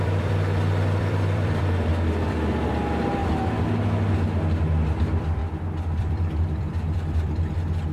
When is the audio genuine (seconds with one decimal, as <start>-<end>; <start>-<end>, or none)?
1.9-2.7; 3.2-4.6; 5.4-6.0